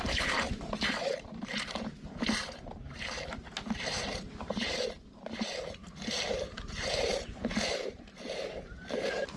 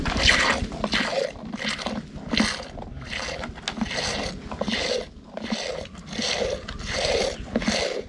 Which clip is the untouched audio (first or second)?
second